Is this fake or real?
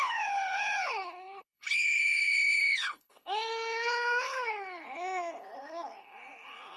fake